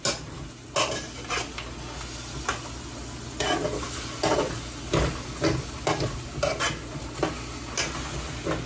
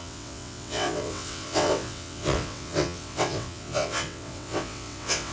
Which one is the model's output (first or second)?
second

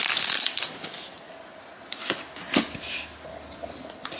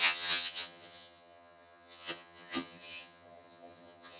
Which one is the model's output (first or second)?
second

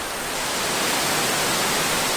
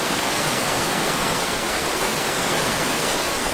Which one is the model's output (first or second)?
second